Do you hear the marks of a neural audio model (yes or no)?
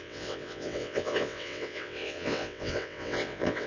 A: yes